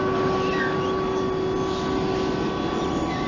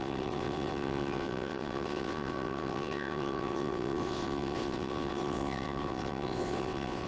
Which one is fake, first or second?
second